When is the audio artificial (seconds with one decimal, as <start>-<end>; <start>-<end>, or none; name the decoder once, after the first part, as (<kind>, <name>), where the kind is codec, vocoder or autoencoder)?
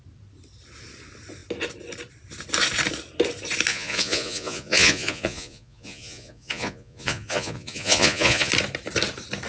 3.7-8.5 (vocoder, Vocos)